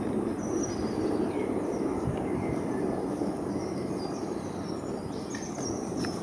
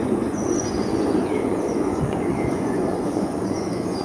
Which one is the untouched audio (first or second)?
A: first